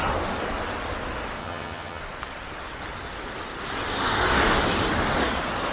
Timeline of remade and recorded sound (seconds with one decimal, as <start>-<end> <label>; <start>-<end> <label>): 0.0-1.4 recorded; 1.4-2.0 remade; 2.0-5.7 recorded

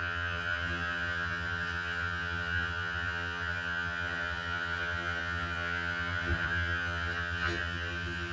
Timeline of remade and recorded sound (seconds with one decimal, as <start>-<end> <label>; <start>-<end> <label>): 0.0-8.3 remade

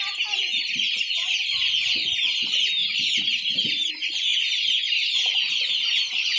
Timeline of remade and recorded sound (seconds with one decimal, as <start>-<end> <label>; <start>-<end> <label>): 0.0-6.4 recorded

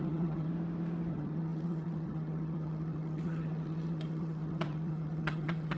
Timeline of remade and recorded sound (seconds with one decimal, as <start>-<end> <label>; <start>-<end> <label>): 0.0-0.5 remade; 0.5-1.1 recorded; 1.1-5.8 remade

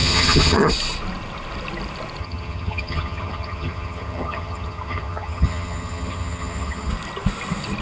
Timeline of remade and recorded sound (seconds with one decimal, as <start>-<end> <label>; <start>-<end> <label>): 0.0-0.7 remade; 0.7-2.2 recorded; 2.2-6.9 remade; 6.9-7.8 recorded

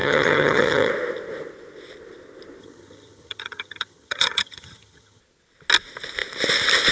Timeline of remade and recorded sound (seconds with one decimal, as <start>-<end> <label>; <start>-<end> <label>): 0.0-0.9 remade; 0.9-2.6 recorded; 2.6-5.2 remade; 5.2-6.9 recorded

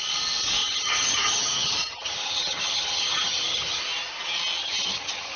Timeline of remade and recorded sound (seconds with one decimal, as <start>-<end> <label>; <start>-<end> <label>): 0.0-0.6 recorded; 0.6-3.8 remade; 3.8-4.6 recorded; 4.6-5.4 remade